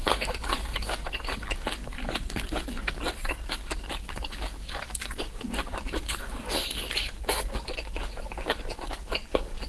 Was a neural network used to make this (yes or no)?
yes